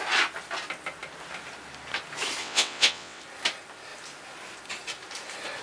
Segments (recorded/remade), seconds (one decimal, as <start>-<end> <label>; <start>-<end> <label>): 0.0-2.4 recorded; 2.4-3.2 remade; 3.2-5.6 recorded